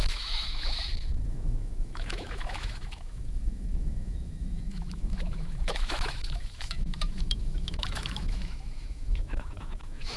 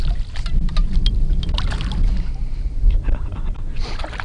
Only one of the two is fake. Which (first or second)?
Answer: first